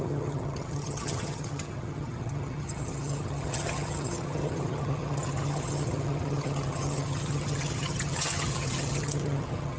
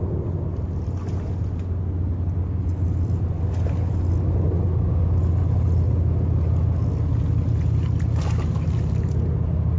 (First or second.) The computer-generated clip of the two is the first